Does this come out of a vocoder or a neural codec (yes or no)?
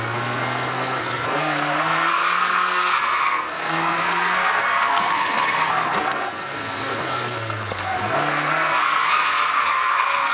yes